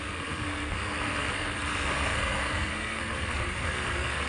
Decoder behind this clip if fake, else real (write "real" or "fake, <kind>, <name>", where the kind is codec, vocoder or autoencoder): fake, codec, SNAC